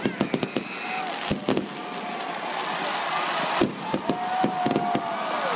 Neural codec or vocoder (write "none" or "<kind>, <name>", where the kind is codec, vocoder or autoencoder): none